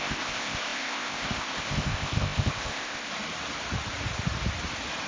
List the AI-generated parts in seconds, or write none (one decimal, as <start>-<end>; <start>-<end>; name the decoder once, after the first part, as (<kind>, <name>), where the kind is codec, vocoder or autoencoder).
0.0-3.1 (codec, ZipCodec)